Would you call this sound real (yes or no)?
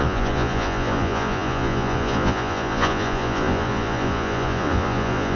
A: no